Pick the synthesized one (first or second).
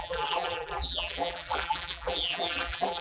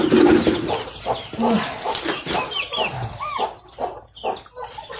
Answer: first